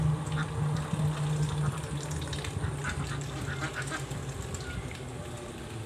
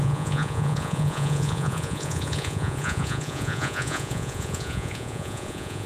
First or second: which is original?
first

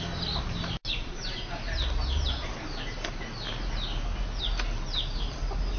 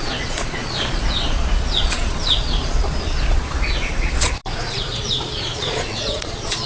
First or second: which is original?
first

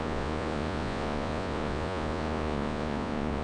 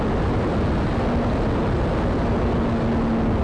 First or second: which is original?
second